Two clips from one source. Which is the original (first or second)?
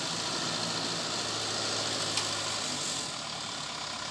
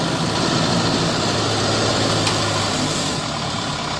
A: first